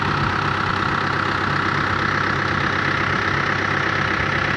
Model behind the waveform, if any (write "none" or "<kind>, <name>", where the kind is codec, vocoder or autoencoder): none